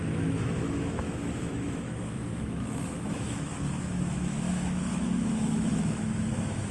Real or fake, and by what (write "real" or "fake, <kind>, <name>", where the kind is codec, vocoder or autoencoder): fake, autoencoder, DAC-VAE